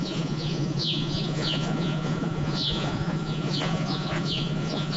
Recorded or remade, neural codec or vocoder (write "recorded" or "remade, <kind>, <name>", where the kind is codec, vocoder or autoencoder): remade, vocoder, Vocos